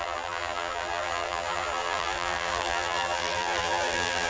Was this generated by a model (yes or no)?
yes